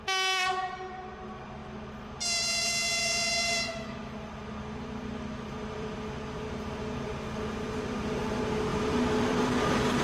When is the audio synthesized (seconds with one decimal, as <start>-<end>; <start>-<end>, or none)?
5.5-6.5; 8.7-10.0